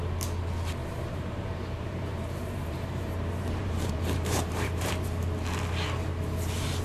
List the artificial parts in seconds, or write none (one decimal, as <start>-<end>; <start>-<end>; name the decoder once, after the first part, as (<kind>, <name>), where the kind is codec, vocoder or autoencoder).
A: 0.8-4.9 (vocoder, BigVGAN v2)